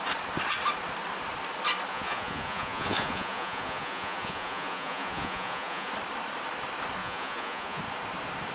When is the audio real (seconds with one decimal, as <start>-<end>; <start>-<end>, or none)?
0.0-1.9; 5.9-7.0; 7.8-8.5

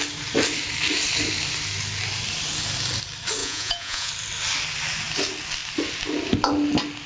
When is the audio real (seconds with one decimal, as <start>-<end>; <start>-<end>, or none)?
0.0-3.4; 4.1-7.1